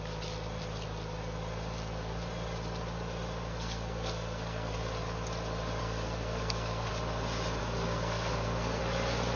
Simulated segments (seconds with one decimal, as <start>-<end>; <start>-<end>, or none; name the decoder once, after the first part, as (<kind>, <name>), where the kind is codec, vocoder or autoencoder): 3.5-4.8 (codec, SNAC); 5.8-6.9; 7.6-8.8